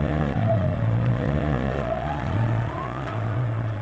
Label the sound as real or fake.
fake